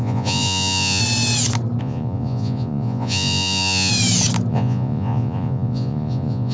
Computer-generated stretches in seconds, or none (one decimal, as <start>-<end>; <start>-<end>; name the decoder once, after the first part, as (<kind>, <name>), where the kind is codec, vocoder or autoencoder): 0.0-1.0 (vocoder, Vocos); 1.8-3.9; 4.5-6.5